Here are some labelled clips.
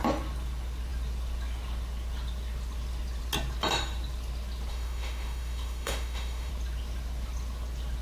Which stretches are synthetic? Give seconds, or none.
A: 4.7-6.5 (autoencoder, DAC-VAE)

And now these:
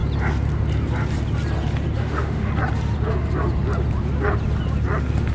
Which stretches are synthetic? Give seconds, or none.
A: 2.0-2.5 (autoencoder, DAC-VAE)

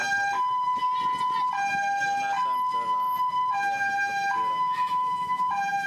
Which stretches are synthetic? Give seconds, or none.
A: 3.5-5.9 (autoencoder, DAC-VAE)